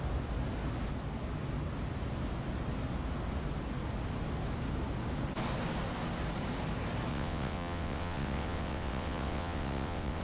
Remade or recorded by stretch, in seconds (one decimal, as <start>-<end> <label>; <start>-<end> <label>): 0.0-7.1 recorded; 7.1-10.2 remade

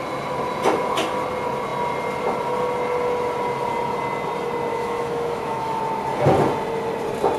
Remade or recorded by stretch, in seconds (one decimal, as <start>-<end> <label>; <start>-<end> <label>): 0.0-4.7 recorded; 4.7-5.8 remade; 5.8-7.4 recorded

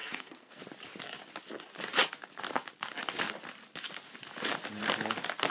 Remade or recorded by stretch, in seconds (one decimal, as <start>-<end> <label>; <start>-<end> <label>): 0.0-0.6 remade; 0.6-5.5 recorded

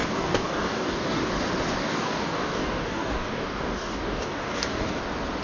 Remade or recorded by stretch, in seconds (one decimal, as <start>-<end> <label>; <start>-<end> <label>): 0.0-1.3 remade; 1.3-1.8 recorded; 1.8-5.0 remade; 5.0-5.4 recorded

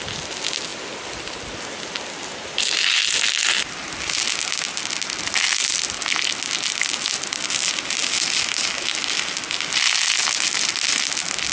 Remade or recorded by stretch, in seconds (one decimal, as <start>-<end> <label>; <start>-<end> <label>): 0.0-11.5 recorded

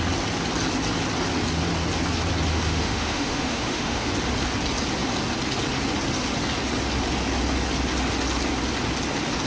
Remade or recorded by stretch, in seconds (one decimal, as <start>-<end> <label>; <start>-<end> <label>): 0.0-2.5 recorded; 2.5-4.1 remade; 4.1-9.5 recorded